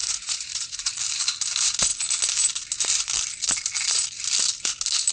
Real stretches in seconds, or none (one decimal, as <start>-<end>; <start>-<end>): 0.9-5.1